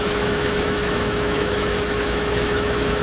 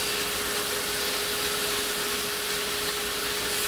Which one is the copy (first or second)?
first